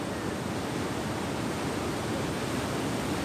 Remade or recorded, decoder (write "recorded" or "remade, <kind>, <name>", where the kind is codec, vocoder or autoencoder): recorded